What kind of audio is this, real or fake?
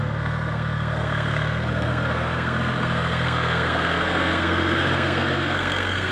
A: fake